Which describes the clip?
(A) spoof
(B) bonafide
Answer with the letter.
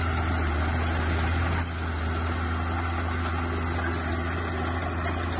B